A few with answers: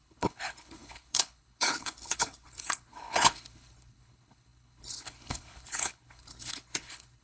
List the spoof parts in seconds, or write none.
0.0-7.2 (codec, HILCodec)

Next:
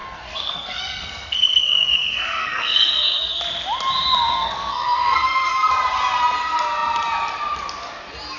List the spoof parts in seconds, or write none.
0.0-3.2 (codec, SNAC); 4.3-5.7

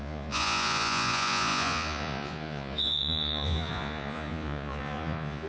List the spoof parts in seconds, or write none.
0.0-5.5 (vocoder, Vocos)

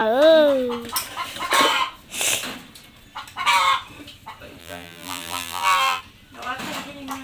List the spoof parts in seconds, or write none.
4.6-6.0 (vocoder, BigVGAN v2)

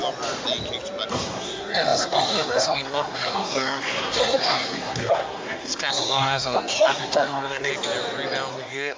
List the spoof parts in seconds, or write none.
1.1-7.7 (codec, SNAC); 8.5-9.0

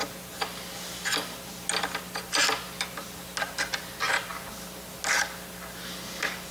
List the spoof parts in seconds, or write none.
none

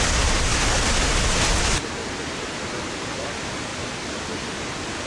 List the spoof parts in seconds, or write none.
none